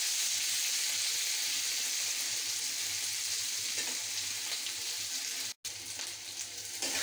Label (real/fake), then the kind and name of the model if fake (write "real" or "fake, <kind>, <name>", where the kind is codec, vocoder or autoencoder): real